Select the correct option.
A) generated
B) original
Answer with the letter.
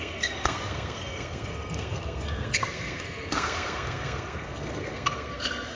A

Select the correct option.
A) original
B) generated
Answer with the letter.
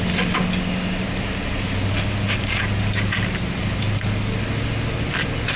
A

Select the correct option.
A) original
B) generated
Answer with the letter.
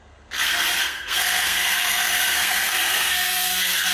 B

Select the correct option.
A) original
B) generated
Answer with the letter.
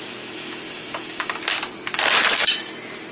A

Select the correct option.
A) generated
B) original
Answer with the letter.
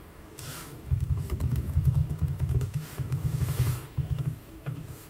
A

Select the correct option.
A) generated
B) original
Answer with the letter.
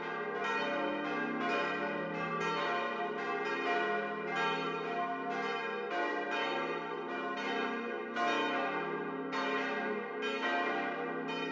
B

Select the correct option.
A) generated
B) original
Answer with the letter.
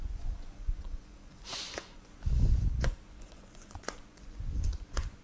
A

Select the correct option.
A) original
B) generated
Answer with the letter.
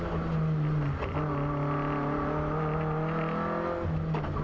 A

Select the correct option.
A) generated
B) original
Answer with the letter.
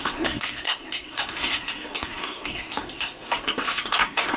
A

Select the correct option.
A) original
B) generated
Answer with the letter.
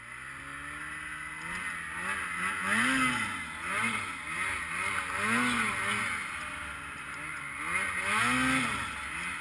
A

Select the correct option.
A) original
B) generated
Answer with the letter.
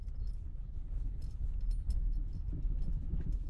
A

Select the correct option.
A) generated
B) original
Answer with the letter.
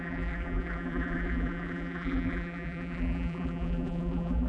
A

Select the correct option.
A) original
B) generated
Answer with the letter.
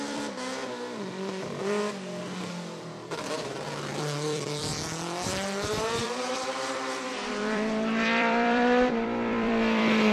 B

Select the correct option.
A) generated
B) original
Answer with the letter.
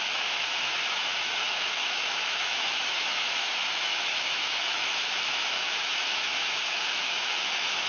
A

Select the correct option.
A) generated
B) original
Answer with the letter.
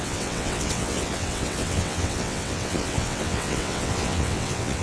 A